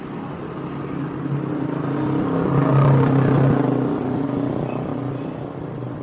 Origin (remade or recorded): recorded